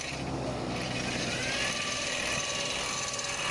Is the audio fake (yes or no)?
no